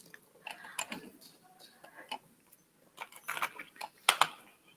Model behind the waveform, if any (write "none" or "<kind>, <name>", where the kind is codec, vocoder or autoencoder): none